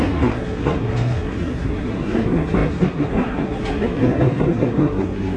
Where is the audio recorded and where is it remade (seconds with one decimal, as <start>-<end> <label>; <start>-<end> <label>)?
0.0-5.4 remade